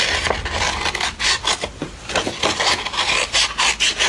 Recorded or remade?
recorded